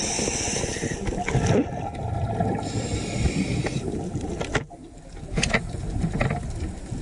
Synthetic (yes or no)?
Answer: no